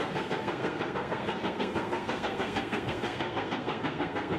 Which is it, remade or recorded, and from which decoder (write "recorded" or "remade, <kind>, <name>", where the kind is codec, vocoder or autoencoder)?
remade, codec, SNAC